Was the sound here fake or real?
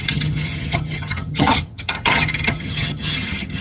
fake